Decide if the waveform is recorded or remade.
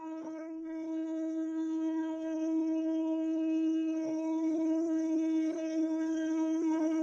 remade